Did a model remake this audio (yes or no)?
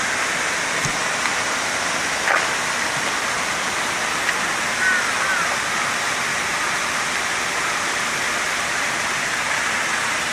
no